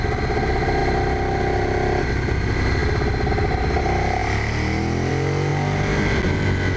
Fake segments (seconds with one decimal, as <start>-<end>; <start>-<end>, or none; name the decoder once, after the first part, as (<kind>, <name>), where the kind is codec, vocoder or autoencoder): none